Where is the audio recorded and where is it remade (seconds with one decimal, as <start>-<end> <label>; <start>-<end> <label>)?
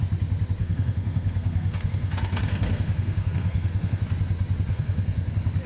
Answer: 0.0-0.6 recorded; 0.6-4.0 remade; 4.0-4.7 recorded; 4.7-5.3 remade; 5.3-5.7 recorded